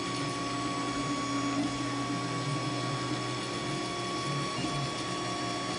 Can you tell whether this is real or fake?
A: real